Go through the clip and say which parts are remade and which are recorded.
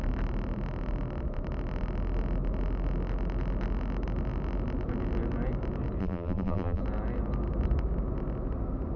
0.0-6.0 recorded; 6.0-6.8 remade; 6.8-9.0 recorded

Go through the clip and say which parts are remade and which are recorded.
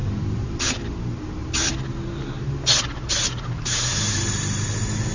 0.0-0.7 remade; 0.7-5.1 recorded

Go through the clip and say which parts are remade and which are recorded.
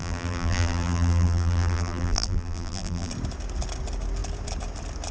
0.0-3.1 remade; 3.1-5.1 recorded